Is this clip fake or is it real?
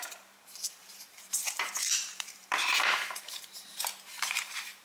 fake